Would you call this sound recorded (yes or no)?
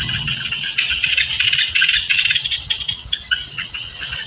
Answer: no